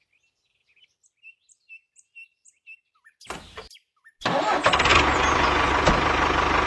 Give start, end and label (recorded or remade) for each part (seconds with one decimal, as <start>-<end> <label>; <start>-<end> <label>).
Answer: 0.0-4.9 recorded; 4.9-5.9 remade; 5.9-6.7 recorded

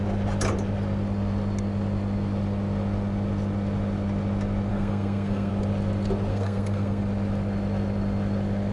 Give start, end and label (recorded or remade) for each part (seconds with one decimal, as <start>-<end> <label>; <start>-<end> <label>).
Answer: 0.0-4.7 recorded; 4.7-5.5 remade; 5.5-6.3 recorded; 6.3-7.0 remade; 7.0-8.7 recorded

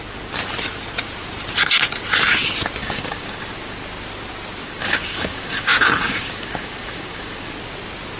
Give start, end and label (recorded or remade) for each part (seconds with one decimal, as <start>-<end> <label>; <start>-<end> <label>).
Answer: 0.0-2.8 recorded; 2.8-3.5 remade; 3.5-4.6 recorded; 4.6-7.5 remade; 7.5-8.2 recorded

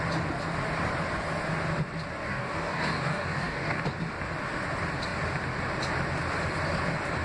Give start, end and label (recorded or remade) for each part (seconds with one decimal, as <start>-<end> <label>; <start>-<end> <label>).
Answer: 0.0-2.2 recorded; 2.2-3.8 remade; 3.8-7.2 recorded

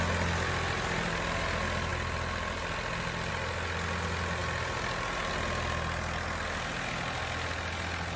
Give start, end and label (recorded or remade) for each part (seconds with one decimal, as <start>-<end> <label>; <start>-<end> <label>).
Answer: 0.0-8.2 recorded

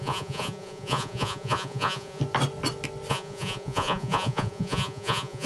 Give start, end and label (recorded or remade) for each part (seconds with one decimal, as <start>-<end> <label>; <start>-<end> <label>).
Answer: 0.0-2.2 remade; 2.2-3.1 recorded; 3.1-5.5 remade

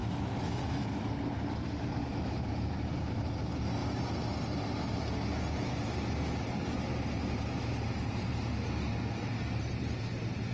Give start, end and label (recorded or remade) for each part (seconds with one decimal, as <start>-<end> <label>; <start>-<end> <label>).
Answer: 0.0-1.0 remade; 1.0-2.0 recorded; 2.0-2.7 remade; 2.7-10.5 recorded